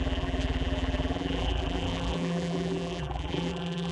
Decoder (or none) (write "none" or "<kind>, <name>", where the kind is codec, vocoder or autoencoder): vocoder, BigVGAN v2